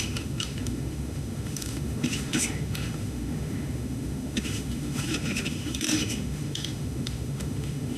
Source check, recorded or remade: remade